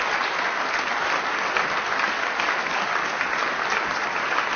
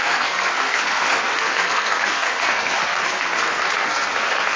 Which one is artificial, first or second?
second